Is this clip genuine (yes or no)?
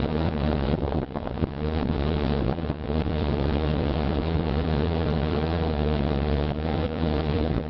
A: no